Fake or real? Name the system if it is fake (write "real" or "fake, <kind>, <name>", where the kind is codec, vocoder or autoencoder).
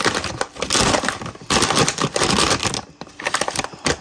real